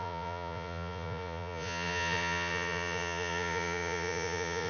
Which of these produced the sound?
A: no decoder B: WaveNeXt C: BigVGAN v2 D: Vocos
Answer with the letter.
D